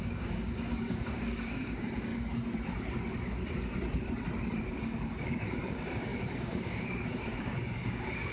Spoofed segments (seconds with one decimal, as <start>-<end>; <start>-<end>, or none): 0.0-2.1; 4.6-8.3